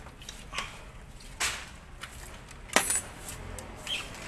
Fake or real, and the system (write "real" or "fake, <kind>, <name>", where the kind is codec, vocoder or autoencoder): real